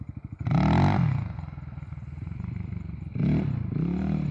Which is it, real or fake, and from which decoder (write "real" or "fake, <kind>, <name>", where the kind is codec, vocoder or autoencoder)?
real